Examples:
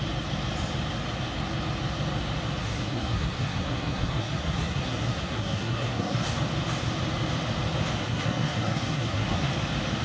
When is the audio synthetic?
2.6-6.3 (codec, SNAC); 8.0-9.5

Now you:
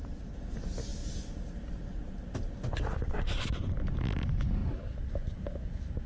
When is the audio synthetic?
none

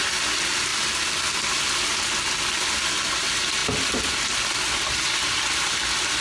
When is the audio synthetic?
none

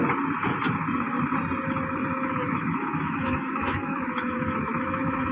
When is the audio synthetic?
2.0-5.3 (autoencoder, DAC-VAE)

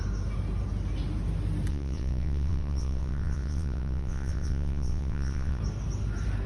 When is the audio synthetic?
1.7-5.6 (vocoder, WaveNeXt)